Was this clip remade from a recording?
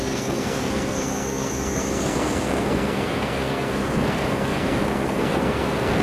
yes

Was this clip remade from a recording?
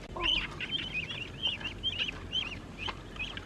no